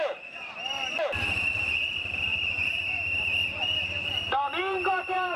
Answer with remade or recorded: remade